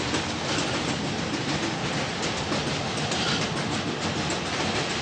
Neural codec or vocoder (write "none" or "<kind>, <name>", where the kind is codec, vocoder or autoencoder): vocoder, BigVGAN v2